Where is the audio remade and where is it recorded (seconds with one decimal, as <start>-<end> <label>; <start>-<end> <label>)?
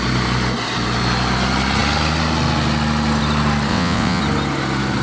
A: 0.0-3.7 recorded; 3.7-4.2 remade; 4.2-5.0 recorded